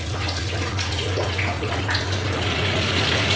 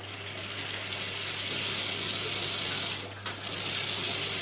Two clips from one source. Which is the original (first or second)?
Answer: second